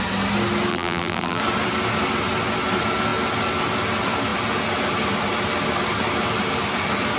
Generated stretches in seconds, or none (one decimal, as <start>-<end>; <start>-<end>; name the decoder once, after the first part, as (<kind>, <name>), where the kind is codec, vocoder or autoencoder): 0.7-1.4 (vocoder, BigVGAN v2)